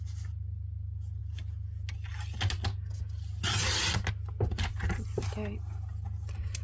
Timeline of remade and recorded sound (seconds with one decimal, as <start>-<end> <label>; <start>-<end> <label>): 0.0-6.6 recorded